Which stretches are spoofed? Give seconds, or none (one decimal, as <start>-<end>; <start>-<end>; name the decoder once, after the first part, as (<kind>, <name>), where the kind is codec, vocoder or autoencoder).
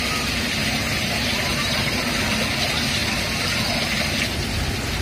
0.6-2.0 (vocoder, BigVGAN v2)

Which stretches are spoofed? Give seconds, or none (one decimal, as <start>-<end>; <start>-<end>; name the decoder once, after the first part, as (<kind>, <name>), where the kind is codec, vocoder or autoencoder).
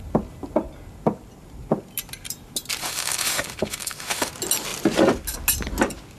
2.8-4.3 (autoencoder, DAC-VAE)